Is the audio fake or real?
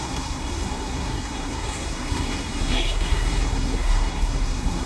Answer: fake